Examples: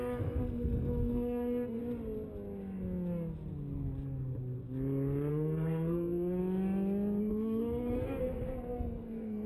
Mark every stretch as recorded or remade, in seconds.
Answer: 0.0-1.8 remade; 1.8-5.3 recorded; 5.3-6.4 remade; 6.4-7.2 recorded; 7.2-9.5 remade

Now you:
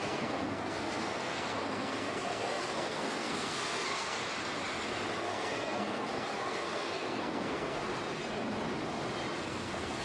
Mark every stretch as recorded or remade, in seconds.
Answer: 0.0-4.2 remade; 4.2-5.2 recorded; 5.2-7.8 remade; 7.8-9.4 recorded; 9.4-10.0 remade

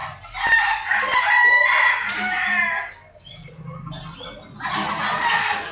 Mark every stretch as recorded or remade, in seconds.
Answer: 0.0-5.7 recorded

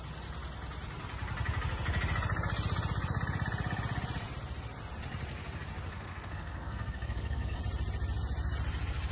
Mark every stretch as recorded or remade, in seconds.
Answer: 0.0-5.9 recorded; 5.9-7.6 remade; 7.6-9.1 recorded

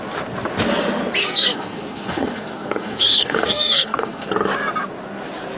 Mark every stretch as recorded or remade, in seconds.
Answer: 0.0-1.2 recorded; 1.2-4.3 remade; 4.3-5.6 recorded

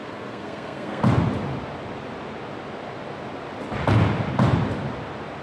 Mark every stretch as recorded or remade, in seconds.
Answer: 0.0-1.0 remade; 1.0-5.4 recorded